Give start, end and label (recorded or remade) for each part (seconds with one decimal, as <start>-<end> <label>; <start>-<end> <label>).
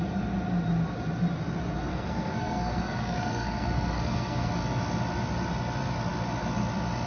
0.0-1.9 recorded; 1.9-4.5 remade; 4.5-7.1 recorded